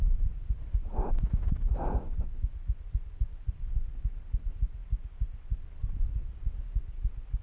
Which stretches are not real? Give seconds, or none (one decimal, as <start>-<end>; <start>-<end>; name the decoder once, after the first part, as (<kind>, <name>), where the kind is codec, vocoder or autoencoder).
none